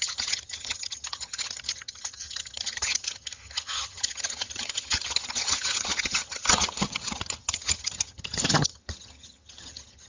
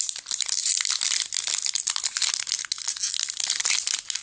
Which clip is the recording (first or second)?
second